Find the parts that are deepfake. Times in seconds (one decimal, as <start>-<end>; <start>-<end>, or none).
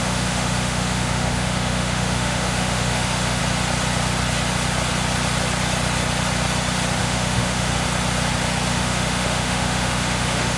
0.0-3.4; 7.0-7.7; 8.7-10.6